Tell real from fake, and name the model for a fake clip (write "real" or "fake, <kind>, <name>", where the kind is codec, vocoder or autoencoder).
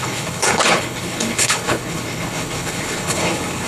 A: fake, codec, HILCodec